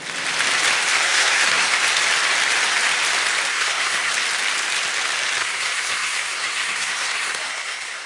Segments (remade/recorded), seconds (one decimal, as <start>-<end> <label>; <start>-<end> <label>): 0.0-1.0 recorded; 1.0-1.7 remade; 1.7-3.5 recorded; 3.5-4.1 remade; 4.1-5.4 recorded; 5.4-8.1 remade

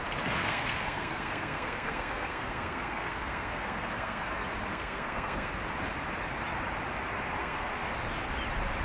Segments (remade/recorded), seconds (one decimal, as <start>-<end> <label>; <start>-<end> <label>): 0.0-0.4 recorded; 0.4-4.3 remade; 4.3-4.7 recorded; 4.7-5.5 remade; 5.5-7.4 recorded; 7.4-7.9 remade; 7.9-8.8 recorded

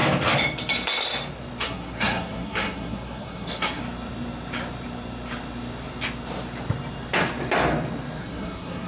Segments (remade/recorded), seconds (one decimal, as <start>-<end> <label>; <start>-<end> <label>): 0.0-1.6 recorded; 1.6-3.8 remade; 3.8-8.2 recorded; 8.2-8.9 remade

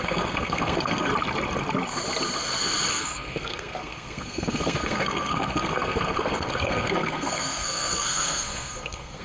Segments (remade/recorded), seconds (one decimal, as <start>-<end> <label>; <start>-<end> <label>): 0.0-1.1 remade; 1.1-2.9 recorded; 2.9-9.2 remade

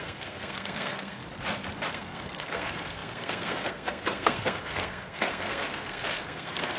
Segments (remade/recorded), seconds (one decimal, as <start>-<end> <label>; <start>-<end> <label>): 0.0-1.2 remade; 1.2-1.9 recorded; 1.9-6.8 remade